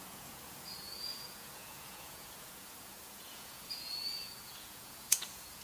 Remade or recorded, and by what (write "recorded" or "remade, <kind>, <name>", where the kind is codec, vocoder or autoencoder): remade, vocoder, Vocos